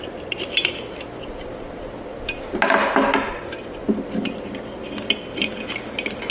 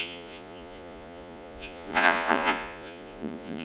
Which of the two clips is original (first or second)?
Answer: first